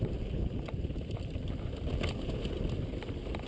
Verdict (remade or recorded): recorded